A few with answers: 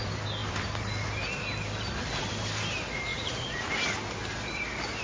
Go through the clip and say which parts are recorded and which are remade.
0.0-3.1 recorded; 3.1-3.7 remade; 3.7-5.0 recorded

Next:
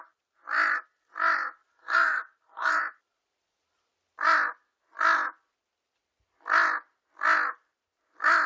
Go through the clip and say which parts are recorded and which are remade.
0.0-1.6 recorded; 1.6-2.8 remade; 2.8-8.5 recorded

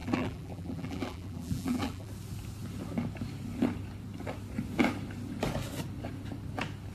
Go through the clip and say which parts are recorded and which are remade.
0.0-2.1 remade; 2.1-6.9 recorded

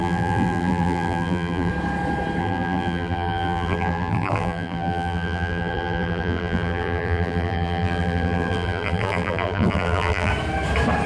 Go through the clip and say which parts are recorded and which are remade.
0.0-1.7 remade; 1.7-2.4 recorded; 2.4-10.3 remade; 10.3-11.1 recorded